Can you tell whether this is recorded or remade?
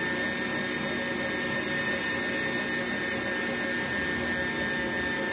recorded